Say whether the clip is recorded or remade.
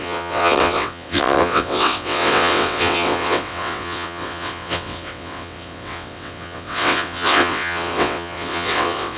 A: remade